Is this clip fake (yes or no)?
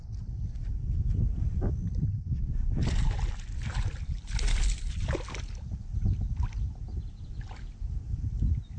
no